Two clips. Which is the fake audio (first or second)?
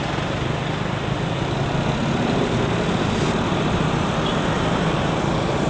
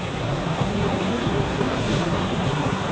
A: second